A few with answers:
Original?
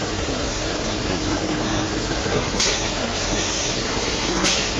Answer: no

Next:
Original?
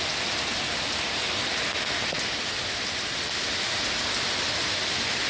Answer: yes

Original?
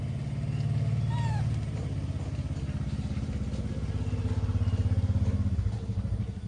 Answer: yes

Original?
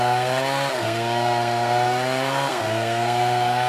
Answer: no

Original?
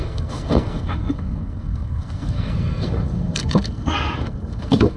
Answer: no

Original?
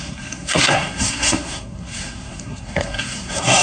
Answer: no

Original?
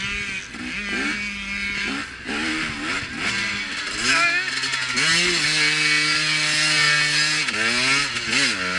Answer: yes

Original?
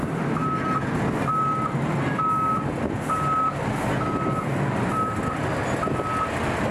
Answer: yes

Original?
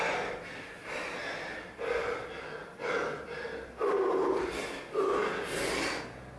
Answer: yes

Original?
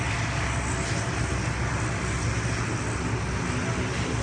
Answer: yes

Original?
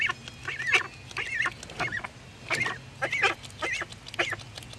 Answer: yes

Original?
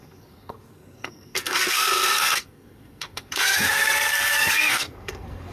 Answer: no